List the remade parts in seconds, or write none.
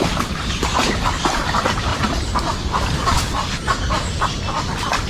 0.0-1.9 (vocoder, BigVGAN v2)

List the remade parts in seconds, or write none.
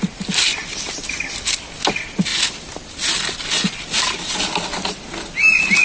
none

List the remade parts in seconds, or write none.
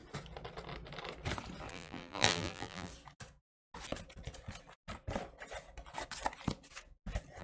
1.7-2.9 (vocoder, BigVGAN v2)